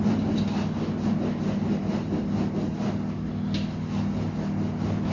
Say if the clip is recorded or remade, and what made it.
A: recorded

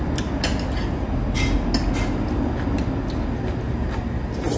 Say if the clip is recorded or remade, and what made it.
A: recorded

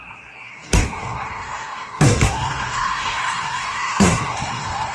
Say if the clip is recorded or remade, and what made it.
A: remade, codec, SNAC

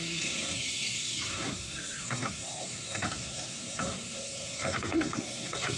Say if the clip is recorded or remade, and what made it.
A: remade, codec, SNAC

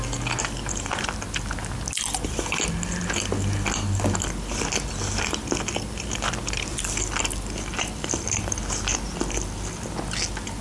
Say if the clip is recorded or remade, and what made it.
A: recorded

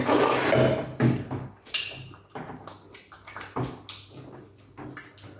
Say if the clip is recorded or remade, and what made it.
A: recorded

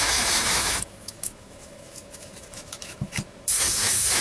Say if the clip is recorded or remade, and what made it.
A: remade, autoencoder, DAC-VAE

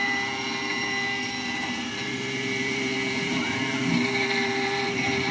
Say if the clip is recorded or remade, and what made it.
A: remade, vocoder, BigVGAN v2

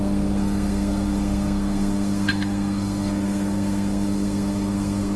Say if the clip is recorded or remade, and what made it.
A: remade, codec, SNAC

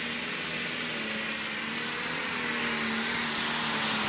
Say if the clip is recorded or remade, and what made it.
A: recorded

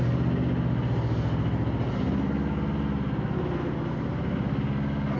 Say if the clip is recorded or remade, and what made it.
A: recorded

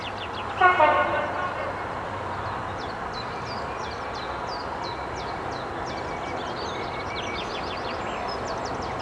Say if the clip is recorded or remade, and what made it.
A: recorded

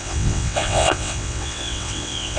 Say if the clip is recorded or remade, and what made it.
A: remade, vocoder, WaveNeXt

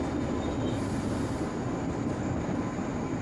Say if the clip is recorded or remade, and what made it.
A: recorded